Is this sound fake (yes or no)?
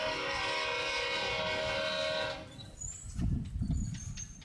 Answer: no